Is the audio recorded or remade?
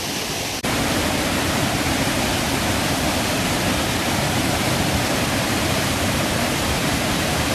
remade